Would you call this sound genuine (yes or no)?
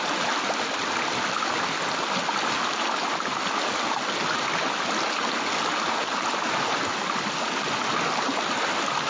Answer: yes